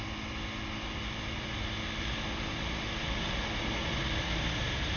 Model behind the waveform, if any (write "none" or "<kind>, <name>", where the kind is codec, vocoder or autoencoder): none